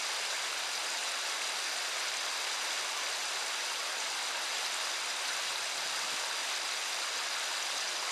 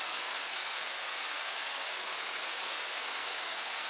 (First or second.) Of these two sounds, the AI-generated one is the second